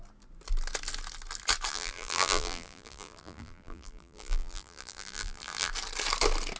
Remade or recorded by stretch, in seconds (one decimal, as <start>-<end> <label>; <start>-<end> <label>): 0.0-1.7 recorded; 1.7-5.7 remade; 5.7-6.6 recorded